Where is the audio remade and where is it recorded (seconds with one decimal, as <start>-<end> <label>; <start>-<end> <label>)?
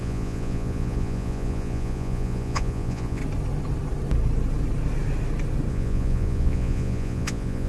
0.0-3.2 remade; 3.2-5.7 recorded; 5.7-7.7 remade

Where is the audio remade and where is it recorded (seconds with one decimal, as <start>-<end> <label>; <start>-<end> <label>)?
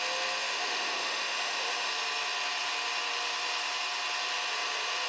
0.0-0.4 recorded; 0.4-1.9 remade; 1.9-5.1 recorded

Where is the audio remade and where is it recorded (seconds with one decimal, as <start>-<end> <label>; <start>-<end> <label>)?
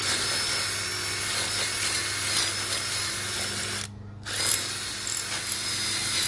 0.0-6.3 recorded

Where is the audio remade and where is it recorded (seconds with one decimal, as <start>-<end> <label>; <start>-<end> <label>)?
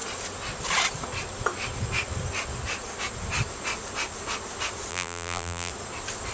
0.0-4.9 recorded; 4.9-5.7 remade; 5.7-6.3 recorded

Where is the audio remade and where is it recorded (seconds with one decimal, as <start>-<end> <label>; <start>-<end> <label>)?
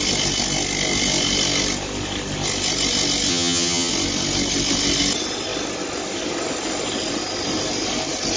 0.0-3.3 recorded; 3.3-3.9 remade; 3.9-8.4 recorded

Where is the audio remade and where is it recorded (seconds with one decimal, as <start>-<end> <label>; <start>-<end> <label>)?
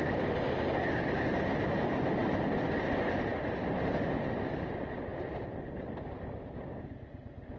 0.0-7.6 recorded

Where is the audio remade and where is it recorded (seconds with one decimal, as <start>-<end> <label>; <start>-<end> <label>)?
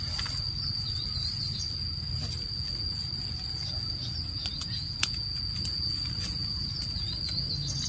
0.0-4.5 recorded; 4.5-5.3 remade; 5.3-7.9 recorded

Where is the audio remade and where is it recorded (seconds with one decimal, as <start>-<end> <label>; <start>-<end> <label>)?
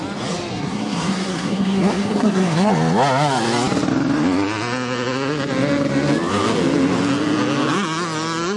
0.0-0.5 recorded; 0.5-2.7 remade; 2.7-8.6 recorded